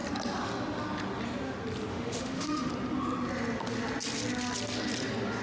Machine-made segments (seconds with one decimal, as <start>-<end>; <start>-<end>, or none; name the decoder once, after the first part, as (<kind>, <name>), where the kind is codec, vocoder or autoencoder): 1.9-2.7 (autoencoder, DAC-VAE)